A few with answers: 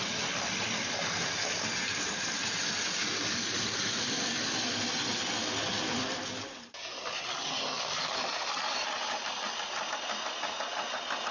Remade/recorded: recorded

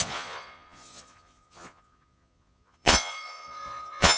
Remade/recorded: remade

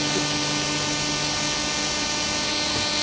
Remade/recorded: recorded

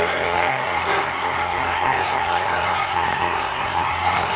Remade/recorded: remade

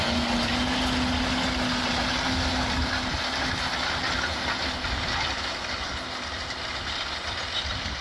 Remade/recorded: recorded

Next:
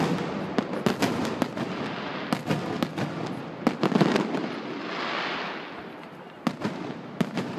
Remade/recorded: recorded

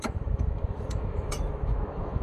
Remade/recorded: remade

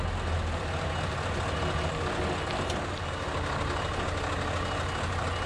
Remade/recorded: recorded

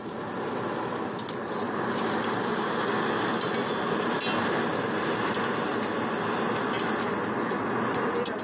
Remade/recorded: recorded